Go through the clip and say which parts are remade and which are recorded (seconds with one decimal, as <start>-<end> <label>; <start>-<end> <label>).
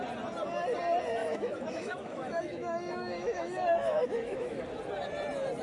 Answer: 0.0-1.2 recorded; 1.2-4.6 remade; 4.6-5.6 recorded